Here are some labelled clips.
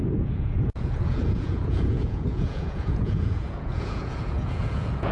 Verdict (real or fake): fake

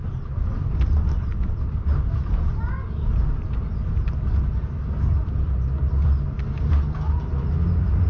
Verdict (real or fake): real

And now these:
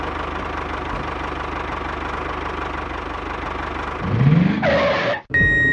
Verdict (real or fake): real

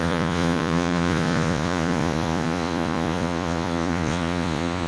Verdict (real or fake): fake